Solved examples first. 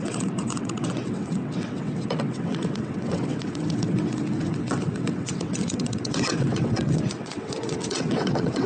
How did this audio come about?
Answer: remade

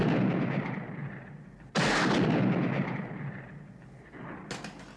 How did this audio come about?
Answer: recorded